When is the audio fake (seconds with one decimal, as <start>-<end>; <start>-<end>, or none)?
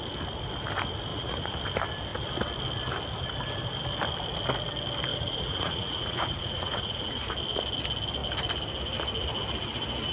1.1-1.6; 5.1-7.3